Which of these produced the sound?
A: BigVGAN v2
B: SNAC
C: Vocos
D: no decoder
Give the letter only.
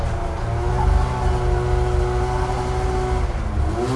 D